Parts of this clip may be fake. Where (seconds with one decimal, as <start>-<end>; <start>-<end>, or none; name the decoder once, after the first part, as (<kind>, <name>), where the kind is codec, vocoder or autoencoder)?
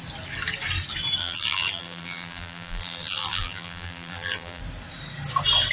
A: 1.2-4.6 (vocoder, BigVGAN v2)